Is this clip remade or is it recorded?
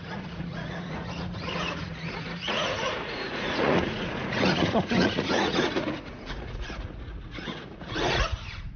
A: remade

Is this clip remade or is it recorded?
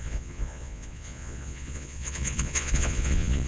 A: remade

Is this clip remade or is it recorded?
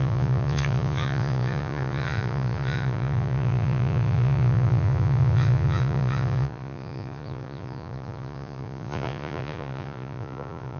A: remade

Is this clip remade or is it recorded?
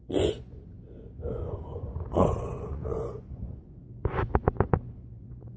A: remade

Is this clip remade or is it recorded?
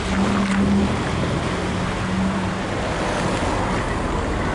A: recorded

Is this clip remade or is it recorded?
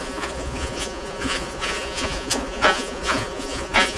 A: remade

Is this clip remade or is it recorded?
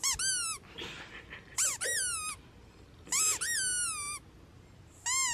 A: recorded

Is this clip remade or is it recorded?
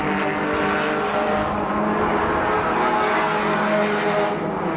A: recorded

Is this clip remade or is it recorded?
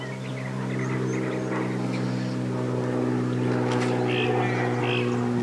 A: recorded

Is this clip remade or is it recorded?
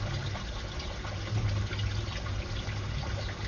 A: recorded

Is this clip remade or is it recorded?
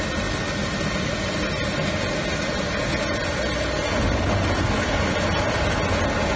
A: recorded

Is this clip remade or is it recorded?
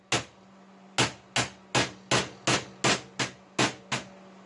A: recorded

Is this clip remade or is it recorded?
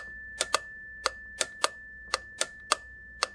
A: recorded